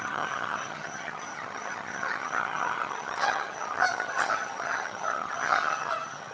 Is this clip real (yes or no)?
no